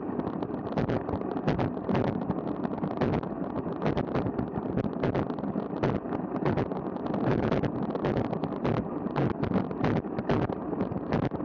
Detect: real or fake real